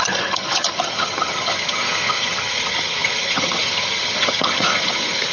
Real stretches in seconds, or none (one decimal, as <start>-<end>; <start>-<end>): none